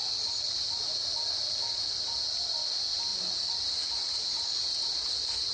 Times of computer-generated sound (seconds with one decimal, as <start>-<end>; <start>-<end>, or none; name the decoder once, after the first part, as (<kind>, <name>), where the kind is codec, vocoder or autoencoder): none